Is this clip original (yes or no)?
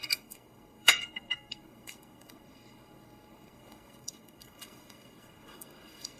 no